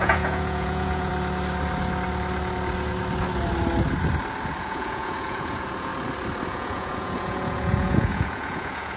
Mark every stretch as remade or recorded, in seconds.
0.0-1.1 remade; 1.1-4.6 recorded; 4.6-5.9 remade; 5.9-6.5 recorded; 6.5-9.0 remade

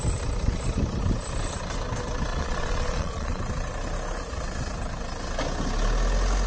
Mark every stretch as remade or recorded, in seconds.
0.0-2.3 recorded; 2.3-3.4 remade; 3.4-6.5 recorded

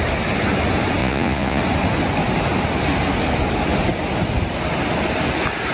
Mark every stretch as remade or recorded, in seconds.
0.0-1.0 recorded; 1.0-1.6 remade; 1.6-5.7 recorded

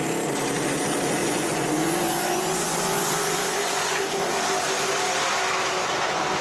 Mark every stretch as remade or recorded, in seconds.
0.0-1.2 recorded; 1.2-4.0 remade; 4.0-6.4 recorded

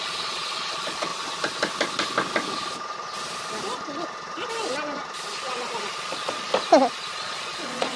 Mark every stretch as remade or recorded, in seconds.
0.0-1.1 remade; 1.1-5.9 recorded; 5.9-6.5 remade; 6.5-7.1 recorded; 7.1-8.0 remade

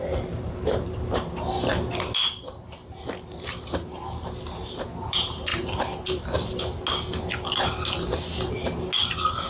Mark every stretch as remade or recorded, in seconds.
0.0-9.5 recorded

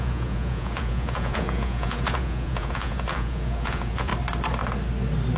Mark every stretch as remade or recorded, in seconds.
0.0-4.1 remade; 4.1-5.4 recorded